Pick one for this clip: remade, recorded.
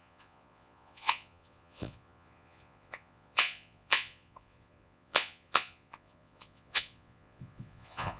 remade